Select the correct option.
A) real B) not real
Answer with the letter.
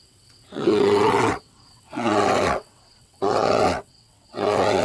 B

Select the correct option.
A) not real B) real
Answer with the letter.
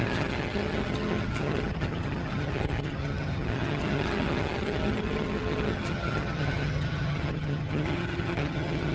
A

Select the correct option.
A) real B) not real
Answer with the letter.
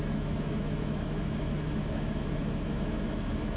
B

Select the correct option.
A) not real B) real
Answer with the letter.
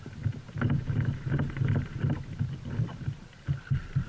B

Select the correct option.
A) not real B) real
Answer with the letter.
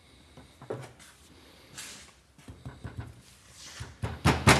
B